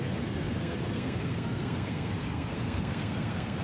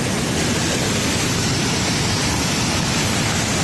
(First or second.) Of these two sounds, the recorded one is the second